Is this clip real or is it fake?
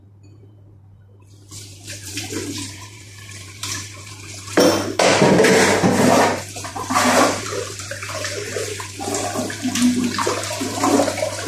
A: fake